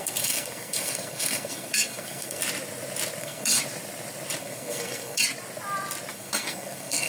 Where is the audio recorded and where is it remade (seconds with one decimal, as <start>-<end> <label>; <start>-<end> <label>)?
0.0-2.4 remade; 2.4-3.2 recorded; 3.2-3.6 remade; 3.6-4.4 recorded; 4.4-5.2 remade; 5.2-6.1 recorded; 6.1-7.1 remade